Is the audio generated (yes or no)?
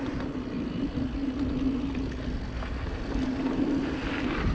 no